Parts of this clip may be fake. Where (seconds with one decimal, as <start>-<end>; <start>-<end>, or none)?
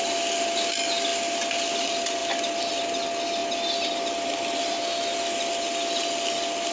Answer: 1.1-1.8; 2.2-2.7; 3.4-4.6